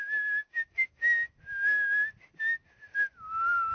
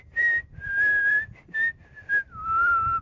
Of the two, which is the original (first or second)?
first